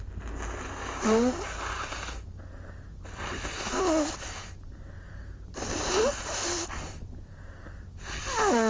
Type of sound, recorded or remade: recorded